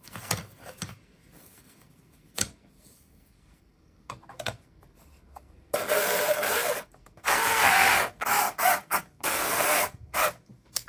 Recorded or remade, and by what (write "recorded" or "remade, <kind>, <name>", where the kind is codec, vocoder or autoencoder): remade, codec, SNAC